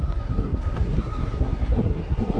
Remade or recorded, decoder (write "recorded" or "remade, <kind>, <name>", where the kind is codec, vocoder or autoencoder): remade, codec, SNAC